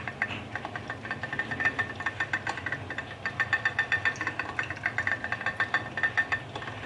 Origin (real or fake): real